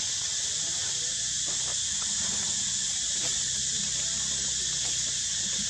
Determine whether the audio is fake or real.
real